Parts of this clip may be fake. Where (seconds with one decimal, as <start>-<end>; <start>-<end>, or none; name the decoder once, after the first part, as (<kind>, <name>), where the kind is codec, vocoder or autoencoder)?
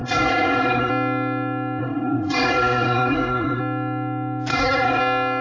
0.0-0.9 (codec, SNAC); 1.8-3.6; 4.5-5.0